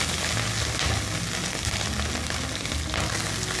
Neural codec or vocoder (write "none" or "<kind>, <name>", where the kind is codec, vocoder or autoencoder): none